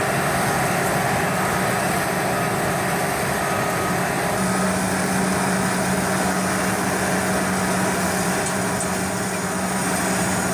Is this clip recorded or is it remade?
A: recorded